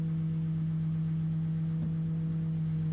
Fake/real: real